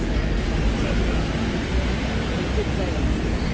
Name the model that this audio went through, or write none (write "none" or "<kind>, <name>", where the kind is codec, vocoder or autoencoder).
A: none